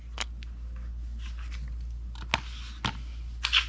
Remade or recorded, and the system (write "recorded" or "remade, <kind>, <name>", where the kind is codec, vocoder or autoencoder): recorded